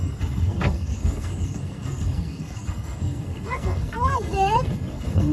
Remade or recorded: remade